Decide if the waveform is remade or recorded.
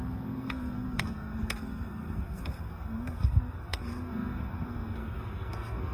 remade